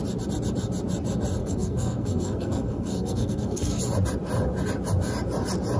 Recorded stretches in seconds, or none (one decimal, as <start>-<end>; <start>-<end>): 0.0-1.4; 3.8-5.8